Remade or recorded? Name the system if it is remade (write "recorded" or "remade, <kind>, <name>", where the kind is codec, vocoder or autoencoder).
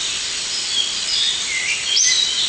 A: recorded